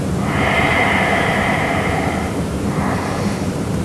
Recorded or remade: remade